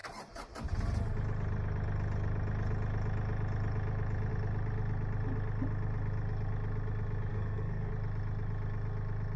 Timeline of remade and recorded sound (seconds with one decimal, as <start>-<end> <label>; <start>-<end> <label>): 0.0-7.3 recorded; 7.3-7.9 remade; 7.9-9.4 recorded